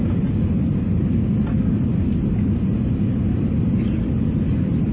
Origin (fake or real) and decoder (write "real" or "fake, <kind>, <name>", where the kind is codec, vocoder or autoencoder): real